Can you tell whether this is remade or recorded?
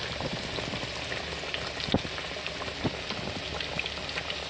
recorded